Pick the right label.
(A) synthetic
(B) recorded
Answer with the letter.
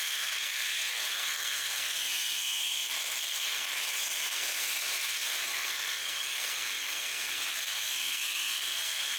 A